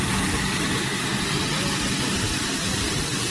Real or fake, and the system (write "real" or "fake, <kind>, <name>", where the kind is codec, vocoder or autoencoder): real